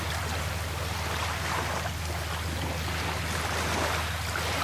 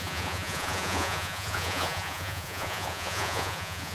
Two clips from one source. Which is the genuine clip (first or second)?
first